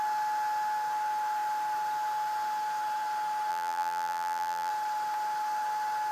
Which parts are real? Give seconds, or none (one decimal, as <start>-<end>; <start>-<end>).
0.0-3.5; 4.7-6.1